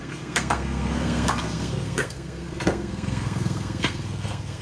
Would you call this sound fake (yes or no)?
yes